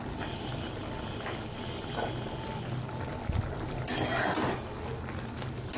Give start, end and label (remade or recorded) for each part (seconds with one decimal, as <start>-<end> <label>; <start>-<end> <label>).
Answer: 0.0-5.8 recorded